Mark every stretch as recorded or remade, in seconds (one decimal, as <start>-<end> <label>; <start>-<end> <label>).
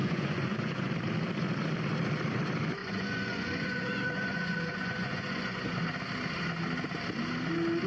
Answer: 0.0-0.9 remade; 0.9-2.8 recorded; 2.8-5.8 remade; 5.8-7.9 recorded